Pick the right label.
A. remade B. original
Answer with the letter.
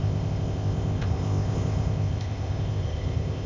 A